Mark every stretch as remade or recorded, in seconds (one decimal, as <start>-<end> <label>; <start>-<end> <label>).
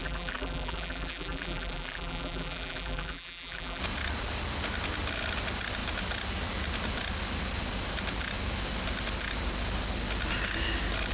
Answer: 0.0-3.8 remade; 3.8-11.1 recorded